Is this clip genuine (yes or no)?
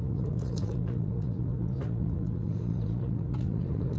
no